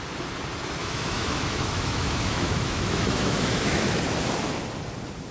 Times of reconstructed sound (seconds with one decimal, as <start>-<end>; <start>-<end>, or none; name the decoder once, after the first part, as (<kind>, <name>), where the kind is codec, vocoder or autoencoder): 0.8-4.0 (autoencoder, DAC-VAE)